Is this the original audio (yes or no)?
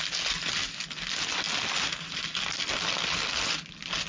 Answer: yes